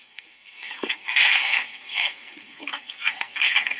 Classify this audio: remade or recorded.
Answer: remade